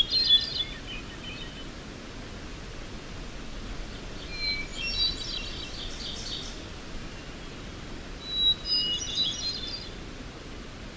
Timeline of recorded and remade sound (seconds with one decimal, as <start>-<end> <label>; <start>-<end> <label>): 0.0-11.0 recorded